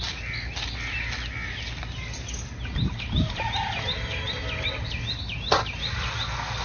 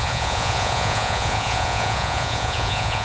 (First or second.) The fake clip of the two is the second